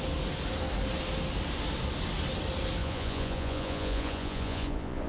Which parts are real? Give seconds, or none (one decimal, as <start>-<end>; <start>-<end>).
0.0-2.8